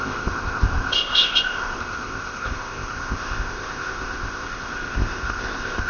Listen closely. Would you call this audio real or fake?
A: fake